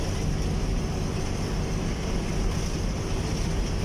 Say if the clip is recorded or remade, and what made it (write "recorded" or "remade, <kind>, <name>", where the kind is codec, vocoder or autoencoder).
recorded